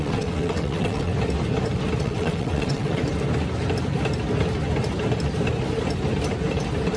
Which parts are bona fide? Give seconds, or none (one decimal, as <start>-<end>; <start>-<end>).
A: 1.1-2.0; 3.0-7.0